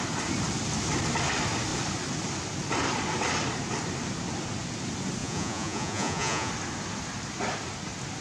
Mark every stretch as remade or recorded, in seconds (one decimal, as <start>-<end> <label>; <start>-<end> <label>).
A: 0.0-5.2 recorded; 5.2-6.5 remade; 6.5-8.2 recorded